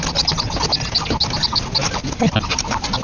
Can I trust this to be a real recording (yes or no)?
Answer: yes